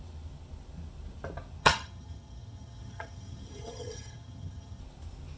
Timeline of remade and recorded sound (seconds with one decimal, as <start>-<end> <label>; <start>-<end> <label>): 0.0-1.6 recorded; 1.6-4.8 remade; 4.8-5.4 recorded

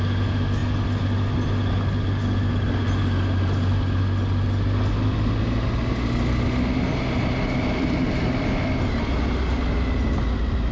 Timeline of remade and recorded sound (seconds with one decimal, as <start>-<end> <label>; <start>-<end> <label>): 0.0-10.7 recorded

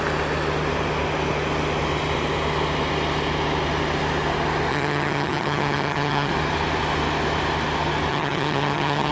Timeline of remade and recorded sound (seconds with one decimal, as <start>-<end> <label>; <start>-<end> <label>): 0.0-4.7 recorded; 4.7-6.3 remade; 6.3-8.1 recorded; 8.1-9.1 remade

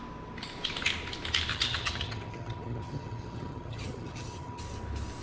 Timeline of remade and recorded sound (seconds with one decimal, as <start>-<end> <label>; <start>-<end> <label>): 0.0-1.5 recorded; 1.5-4.6 remade; 4.6-5.2 recorded

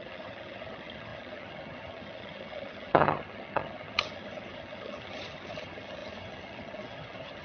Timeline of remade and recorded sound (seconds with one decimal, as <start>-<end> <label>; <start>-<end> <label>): 0.0-7.4 remade

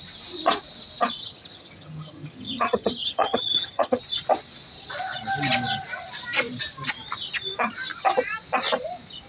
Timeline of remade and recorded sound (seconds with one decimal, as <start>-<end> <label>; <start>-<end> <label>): 0.0-1.2 recorded; 1.2-4.0 remade; 4.0-9.3 recorded

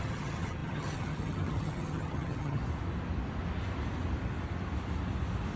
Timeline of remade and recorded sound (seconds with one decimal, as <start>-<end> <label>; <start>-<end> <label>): 0.0-2.6 remade; 2.6-5.6 recorded

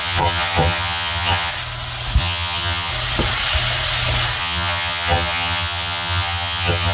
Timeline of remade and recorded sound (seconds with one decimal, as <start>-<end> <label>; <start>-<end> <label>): 0.0-1.5 remade; 1.5-2.2 recorded; 2.2-2.9 remade; 2.9-4.4 recorded; 4.4-6.9 remade